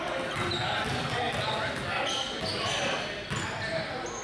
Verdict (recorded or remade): recorded